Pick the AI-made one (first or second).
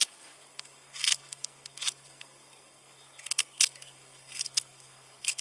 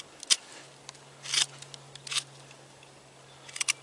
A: first